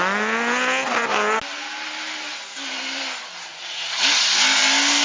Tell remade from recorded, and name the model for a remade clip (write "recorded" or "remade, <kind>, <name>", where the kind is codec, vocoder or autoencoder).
recorded